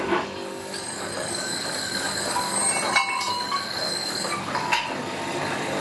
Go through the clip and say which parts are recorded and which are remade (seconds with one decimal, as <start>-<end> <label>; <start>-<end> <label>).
0.0-2.6 remade; 2.6-3.2 recorded; 3.2-5.8 remade